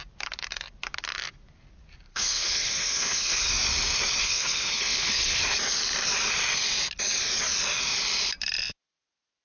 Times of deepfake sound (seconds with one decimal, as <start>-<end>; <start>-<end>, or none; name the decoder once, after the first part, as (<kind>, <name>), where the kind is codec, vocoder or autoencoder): 2.1-3.5 (codec, HILCodec); 4.2-5.4